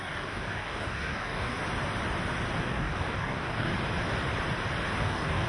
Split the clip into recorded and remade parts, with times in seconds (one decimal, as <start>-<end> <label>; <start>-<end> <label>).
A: 0.0-1.6 remade; 1.6-2.6 recorded; 2.6-3.7 remade; 3.7-5.0 recorded; 5.0-5.5 remade